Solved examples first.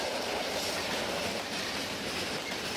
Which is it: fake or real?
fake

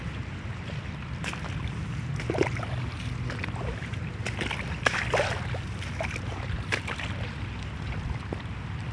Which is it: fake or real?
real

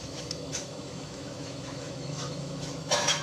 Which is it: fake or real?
fake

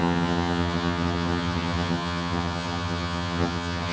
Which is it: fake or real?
fake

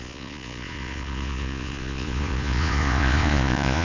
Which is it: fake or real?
fake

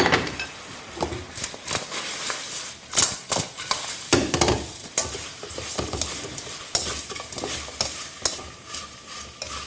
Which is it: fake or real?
real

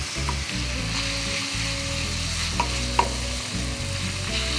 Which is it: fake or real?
real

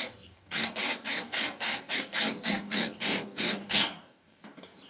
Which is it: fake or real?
fake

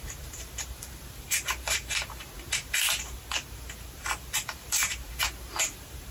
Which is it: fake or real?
fake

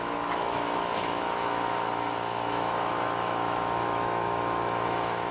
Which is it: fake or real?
fake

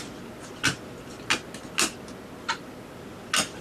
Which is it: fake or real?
real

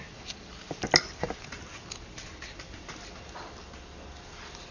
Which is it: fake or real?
real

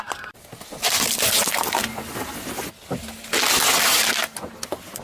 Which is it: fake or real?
real